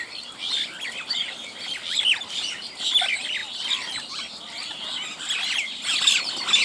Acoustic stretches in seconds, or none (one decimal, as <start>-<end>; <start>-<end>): none